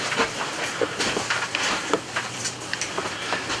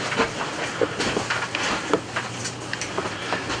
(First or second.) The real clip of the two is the second